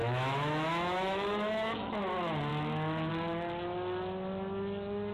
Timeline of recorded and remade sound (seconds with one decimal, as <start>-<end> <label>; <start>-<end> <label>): 0.0-1.9 remade; 1.9-5.1 recorded